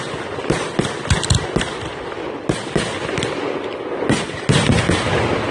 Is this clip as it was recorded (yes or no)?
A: yes